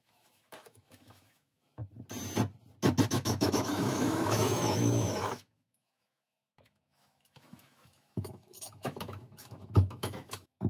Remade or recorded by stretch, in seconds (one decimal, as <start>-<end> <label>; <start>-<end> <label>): 0.0-1.8 remade; 1.8-3.1 recorded; 3.1-10.7 remade